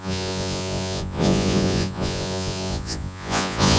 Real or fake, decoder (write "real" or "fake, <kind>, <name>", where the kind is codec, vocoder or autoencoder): fake, vocoder, Vocos